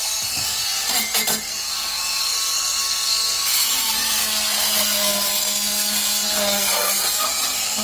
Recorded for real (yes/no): no